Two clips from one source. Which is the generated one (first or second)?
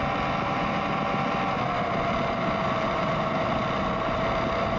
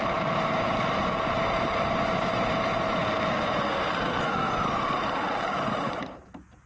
second